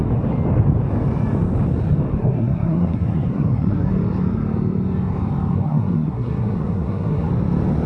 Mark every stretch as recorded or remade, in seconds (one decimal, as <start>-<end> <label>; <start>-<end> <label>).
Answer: 0.0-2.1 recorded; 2.1-3.9 remade; 3.9-5.5 recorded; 5.5-7.3 remade; 7.3-7.9 recorded